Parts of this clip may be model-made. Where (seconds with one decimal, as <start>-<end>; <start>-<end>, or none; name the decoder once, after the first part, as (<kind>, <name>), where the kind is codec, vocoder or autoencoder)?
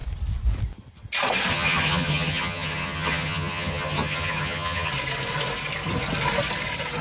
1.5-4.9 (vocoder, HiFi-GAN)